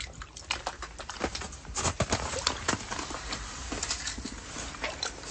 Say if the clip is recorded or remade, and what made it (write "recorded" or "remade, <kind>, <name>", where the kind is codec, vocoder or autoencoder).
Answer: recorded